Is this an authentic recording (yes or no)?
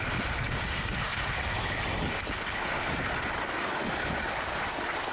yes